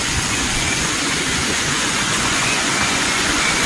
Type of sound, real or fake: fake